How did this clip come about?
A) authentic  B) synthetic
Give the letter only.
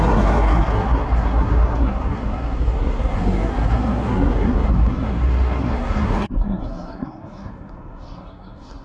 B